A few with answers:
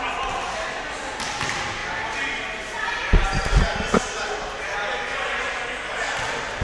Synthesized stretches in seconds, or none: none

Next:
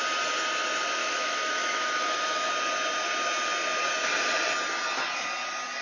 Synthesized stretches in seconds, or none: 1.0-2.5

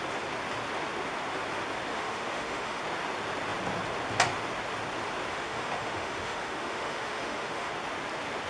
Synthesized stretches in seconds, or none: 1.9-2.8; 5.3-7.7

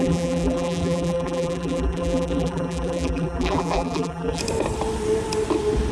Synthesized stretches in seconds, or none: 0.0-4.4

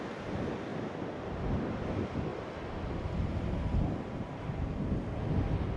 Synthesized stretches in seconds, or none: 2.3-5.2

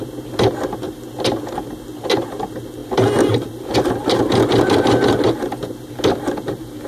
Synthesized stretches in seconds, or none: none